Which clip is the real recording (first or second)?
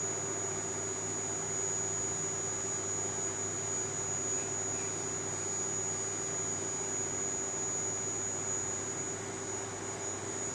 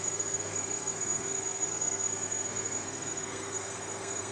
first